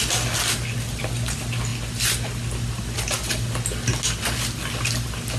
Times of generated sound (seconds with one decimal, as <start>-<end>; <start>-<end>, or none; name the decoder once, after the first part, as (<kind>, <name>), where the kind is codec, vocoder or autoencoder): none